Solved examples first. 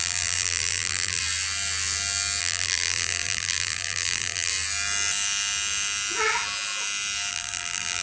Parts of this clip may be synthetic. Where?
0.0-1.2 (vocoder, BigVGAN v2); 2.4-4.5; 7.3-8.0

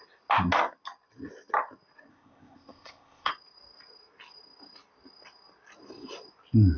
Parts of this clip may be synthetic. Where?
2.1-3.3 (codec, ZipCodec)

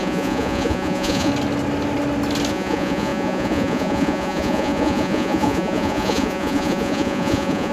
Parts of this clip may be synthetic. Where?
0.0-1.3 (vocoder, Vocos); 2.5-7.7

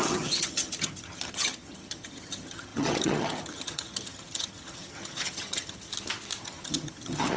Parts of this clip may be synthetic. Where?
0.0-5.9 (vocoder, HiFi-GAN); 6.4-7.4

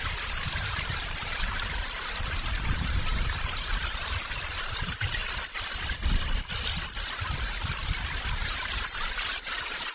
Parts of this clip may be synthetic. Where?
0.0-5.2 (vocoder, BigVGAN v2); 8.3-9.9

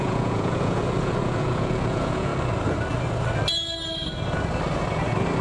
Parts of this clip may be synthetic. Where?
0.0-2.3 (vocoder, Vocos)